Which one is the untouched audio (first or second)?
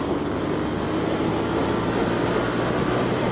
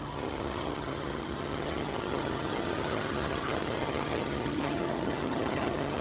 first